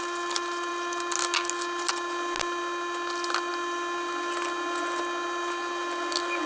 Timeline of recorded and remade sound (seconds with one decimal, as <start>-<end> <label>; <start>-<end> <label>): 0.0-6.5 recorded